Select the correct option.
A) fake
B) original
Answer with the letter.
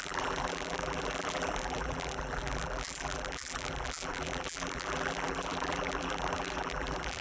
A